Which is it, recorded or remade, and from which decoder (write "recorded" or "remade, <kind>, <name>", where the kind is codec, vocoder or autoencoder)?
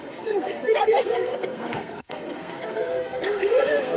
remade, codec, SNAC